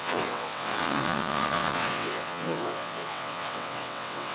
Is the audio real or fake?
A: fake